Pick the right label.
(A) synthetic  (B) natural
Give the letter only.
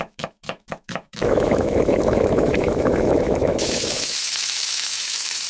A